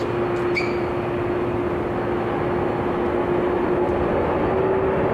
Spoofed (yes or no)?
no